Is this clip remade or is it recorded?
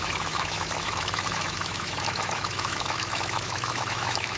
remade